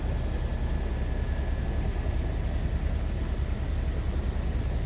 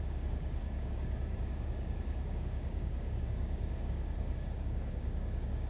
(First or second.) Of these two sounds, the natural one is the first